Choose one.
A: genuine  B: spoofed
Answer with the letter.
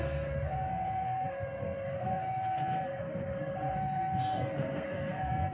B